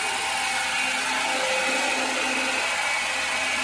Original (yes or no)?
yes